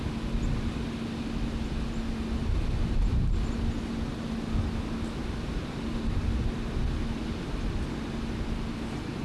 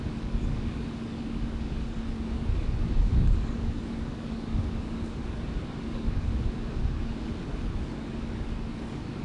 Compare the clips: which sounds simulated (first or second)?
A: second